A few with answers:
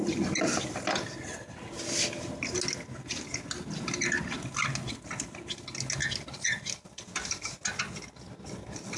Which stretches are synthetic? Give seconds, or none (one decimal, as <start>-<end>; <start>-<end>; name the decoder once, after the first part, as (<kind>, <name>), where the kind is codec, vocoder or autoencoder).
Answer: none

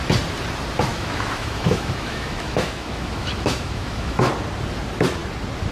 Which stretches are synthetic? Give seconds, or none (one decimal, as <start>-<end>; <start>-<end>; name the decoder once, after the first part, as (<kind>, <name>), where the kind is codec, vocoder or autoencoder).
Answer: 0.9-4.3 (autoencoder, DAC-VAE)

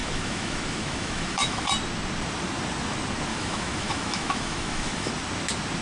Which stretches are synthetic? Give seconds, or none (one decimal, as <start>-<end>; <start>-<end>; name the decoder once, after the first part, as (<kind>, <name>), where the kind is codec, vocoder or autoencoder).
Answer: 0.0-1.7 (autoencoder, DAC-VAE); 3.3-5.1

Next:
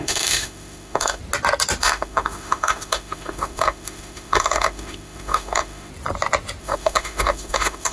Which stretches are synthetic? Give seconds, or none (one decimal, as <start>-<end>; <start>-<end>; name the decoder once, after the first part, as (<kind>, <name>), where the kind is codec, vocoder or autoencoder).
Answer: 0.0-1.2 (autoencoder, DAC-VAE); 1.8-5.9; 6.6-7.9